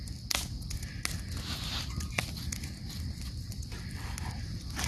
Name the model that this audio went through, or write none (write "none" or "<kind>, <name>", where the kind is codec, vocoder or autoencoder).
none